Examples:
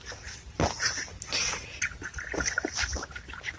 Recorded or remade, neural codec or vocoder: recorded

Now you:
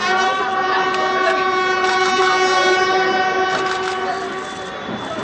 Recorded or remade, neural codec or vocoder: recorded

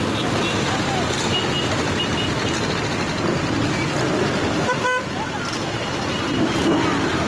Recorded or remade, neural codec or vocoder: recorded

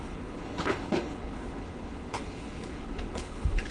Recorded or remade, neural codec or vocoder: remade, codec, HILCodec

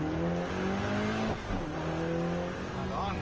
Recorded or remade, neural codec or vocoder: recorded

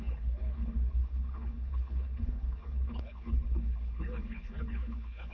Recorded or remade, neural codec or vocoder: remade, codec, HILCodec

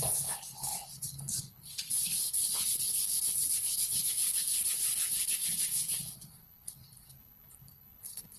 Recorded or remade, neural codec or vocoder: remade, codec, HILCodec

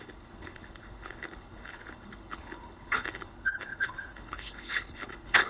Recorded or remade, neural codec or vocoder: remade, codec, HILCodec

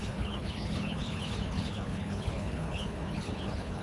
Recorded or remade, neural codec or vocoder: remade, codec, HILCodec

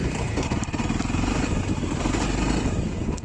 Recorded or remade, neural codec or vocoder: recorded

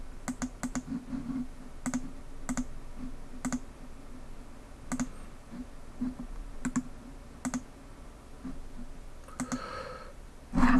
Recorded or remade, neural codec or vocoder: recorded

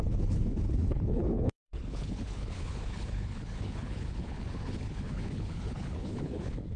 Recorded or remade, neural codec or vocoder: remade, codec, HILCodec